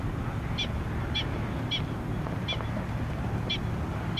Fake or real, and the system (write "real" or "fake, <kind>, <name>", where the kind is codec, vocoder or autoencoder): real